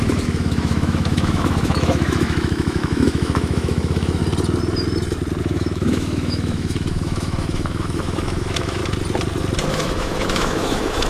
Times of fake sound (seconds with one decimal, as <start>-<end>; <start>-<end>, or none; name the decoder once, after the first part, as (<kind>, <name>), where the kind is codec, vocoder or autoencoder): 0.0-4.2 (autoencoder, DAC-VAE); 5.4-8.8; 9.7-11.1